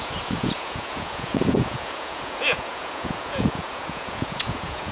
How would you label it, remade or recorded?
remade